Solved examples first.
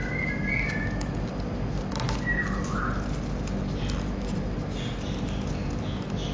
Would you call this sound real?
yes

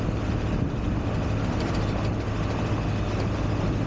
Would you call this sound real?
yes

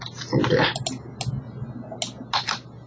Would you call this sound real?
yes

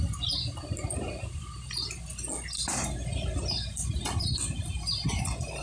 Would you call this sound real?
yes